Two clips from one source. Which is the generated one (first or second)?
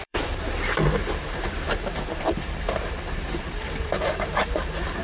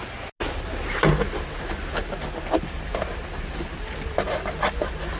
first